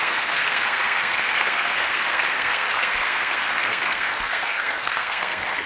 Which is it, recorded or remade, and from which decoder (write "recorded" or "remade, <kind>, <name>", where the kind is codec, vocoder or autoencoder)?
remade, codec, SNAC